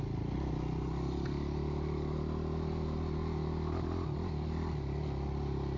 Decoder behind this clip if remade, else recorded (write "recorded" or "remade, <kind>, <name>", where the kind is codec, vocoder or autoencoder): recorded